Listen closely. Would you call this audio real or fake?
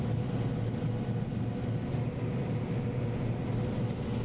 real